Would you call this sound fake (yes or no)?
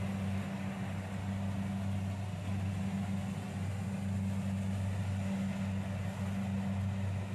no